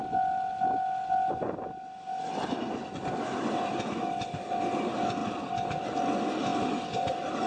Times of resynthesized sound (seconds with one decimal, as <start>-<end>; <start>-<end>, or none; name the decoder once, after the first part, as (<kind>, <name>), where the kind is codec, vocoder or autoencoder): none